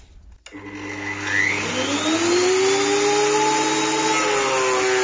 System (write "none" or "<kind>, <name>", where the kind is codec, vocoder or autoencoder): none